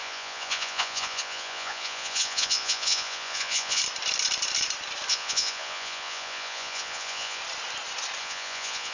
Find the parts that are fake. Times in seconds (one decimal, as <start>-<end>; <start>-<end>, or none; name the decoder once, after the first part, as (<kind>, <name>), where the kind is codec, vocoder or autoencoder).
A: 0.0-3.8 (vocoder, Vocos); 5.1-7.4; 8.2-8.9